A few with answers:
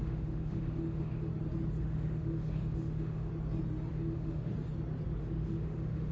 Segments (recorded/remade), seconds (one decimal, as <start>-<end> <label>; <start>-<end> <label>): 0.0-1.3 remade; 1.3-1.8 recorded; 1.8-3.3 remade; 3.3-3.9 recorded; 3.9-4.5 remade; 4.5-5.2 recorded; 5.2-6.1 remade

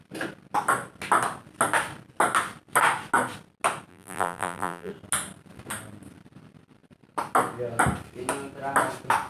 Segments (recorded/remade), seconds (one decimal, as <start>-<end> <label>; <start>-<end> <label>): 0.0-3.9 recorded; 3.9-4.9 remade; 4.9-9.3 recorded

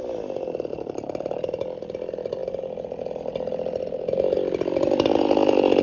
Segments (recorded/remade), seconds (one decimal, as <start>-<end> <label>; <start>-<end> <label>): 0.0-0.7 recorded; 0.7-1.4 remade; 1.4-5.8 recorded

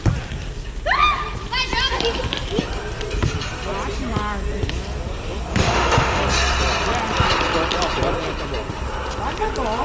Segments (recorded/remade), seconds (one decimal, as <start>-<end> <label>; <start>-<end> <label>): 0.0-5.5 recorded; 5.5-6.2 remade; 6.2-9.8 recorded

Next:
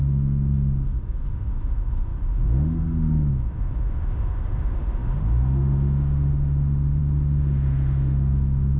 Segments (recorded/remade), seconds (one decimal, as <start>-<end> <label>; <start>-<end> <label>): 0.0-8.8 remade